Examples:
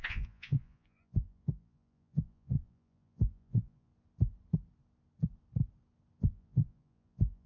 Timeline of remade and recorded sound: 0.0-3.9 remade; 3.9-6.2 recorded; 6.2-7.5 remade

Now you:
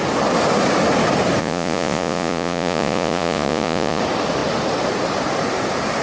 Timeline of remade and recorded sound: 0.0-1.4 recorded; 1.4-4.0 remade; 4.0-6.0 recorded

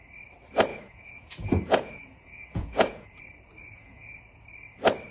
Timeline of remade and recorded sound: 0.0-0.7 recorded; 0.7-3.2 remade; 3.2-3.6 recorded; 3.6-4.2 remade; 4.2-5.1 recorded

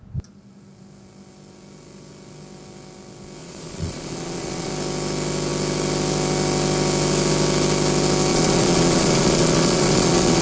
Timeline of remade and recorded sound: 0.0-3.4 recorded; 3.4-4.7 remade; 4.7-8.3 recorded; 8.3-10.4 remade

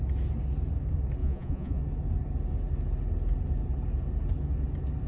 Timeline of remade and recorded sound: 0.0-1.2 recorded; 1.2-1.8 remade; 1.8-5.1 recorded

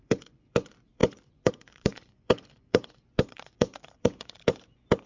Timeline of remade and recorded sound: 0.0-5.1 remade